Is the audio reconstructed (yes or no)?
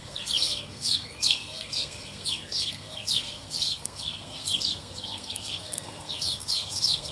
yes